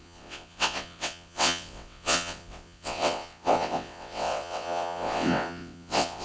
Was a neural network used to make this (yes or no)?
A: yes